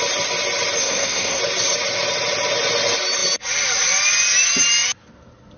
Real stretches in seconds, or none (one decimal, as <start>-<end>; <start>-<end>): 0.0-0.8; 1.4-5.6